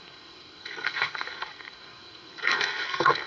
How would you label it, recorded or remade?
remade